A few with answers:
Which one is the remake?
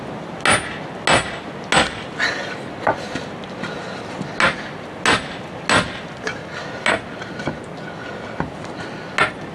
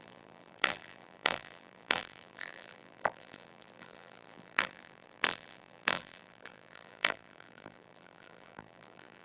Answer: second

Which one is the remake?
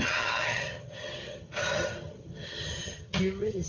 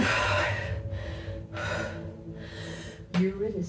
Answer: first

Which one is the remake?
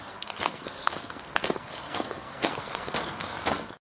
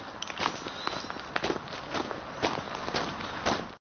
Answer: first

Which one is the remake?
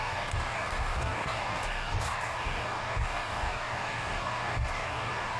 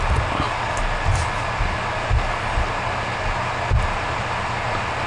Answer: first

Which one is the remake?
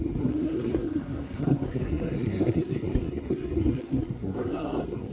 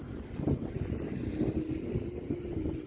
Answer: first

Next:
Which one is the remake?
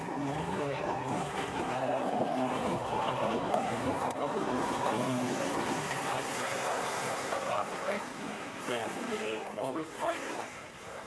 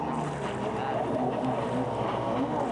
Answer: first